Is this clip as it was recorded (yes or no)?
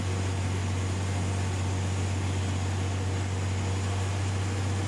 yes